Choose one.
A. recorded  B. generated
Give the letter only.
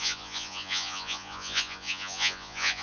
B